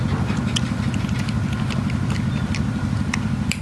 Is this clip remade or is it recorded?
recorded